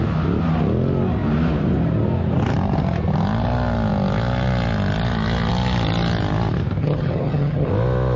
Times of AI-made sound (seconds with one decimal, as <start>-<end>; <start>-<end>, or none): 6.8-7.7